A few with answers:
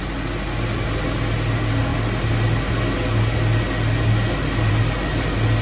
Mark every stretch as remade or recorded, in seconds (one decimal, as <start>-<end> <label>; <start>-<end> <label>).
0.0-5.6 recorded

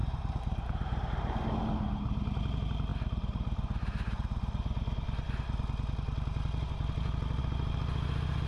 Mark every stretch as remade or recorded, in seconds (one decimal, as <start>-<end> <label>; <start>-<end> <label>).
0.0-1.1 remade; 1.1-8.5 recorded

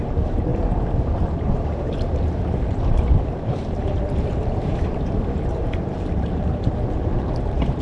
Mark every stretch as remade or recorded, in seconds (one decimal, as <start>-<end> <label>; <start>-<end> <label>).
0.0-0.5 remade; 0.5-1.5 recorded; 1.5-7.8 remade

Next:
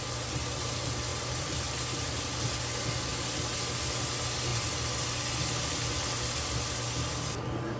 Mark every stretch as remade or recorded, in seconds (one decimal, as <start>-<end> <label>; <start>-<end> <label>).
0.0-1.1 recorded; 1.1-2.2 remade; 2.2-7.8 recorded

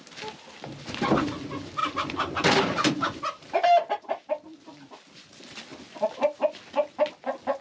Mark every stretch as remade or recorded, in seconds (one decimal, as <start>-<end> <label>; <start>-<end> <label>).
0.0-1.8 recorded; 1.8-4.3 remade; 4.3-7.6 recorded

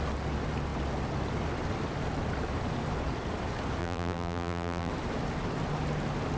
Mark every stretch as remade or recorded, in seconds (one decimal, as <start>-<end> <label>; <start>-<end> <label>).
0.0-3.8 recorded; 3.8-4.9 remade; 4.9-6.4 recorded